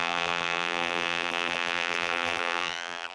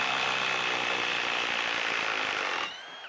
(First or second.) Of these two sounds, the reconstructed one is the first